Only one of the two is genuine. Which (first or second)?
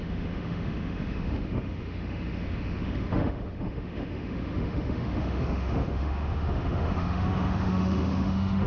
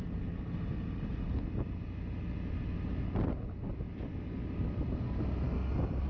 second